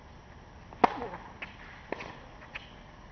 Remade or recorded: recorded